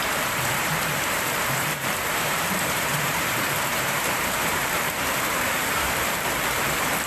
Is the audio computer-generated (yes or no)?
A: yes